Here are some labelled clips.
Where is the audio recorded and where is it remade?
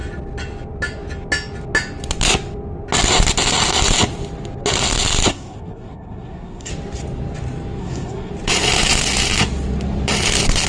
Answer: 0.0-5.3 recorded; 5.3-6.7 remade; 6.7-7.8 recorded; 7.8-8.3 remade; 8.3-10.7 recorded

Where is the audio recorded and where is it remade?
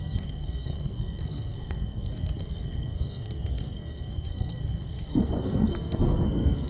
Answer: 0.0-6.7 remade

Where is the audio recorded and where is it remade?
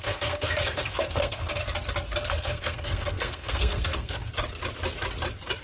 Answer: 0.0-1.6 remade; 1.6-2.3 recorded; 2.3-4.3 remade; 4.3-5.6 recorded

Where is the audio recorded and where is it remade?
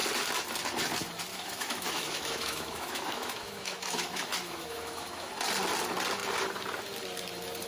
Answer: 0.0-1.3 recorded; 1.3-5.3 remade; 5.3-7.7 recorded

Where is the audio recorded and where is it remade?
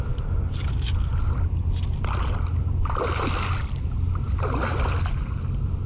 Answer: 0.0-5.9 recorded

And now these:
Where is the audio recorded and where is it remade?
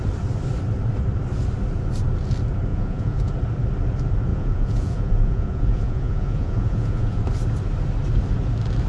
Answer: 0.0-2.7 recorded; 2.7-3.3 remade; 3.3-4.3 recorded; 4.3-7.2 remade; 7.2-8.9 recorded